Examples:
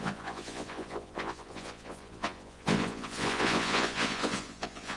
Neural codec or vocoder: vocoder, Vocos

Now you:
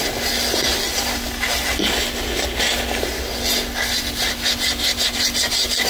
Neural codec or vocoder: none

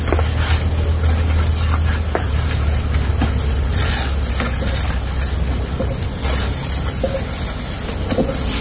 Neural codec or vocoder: none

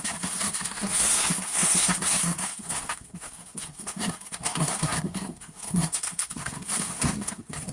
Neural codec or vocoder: codec, SNAC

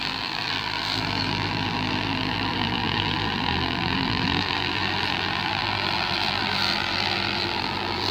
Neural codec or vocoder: vocoder, BigVGAN v2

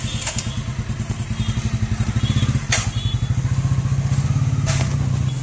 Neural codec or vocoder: none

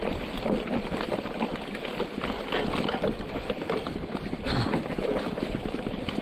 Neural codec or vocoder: none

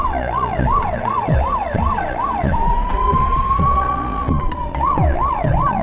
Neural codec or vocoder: vocoder, Vocos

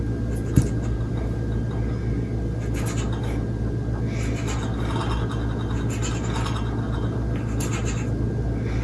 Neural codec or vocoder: none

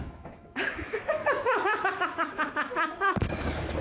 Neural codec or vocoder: autoencoder, DAC-VAE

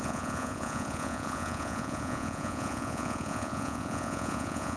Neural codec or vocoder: vocoder, Vocos